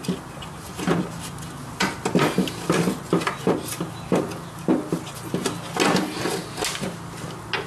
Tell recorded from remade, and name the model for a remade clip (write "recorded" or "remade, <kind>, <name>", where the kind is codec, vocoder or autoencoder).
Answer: recorded